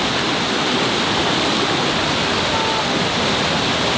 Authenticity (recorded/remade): recorded